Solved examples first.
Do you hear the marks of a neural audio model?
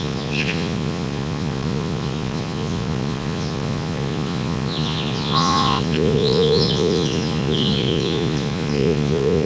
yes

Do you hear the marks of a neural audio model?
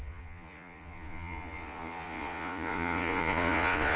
yes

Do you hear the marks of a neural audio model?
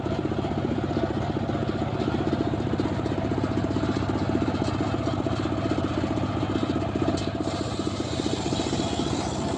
no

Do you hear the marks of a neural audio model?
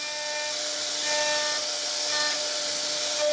no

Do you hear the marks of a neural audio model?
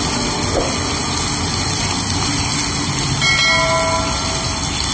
no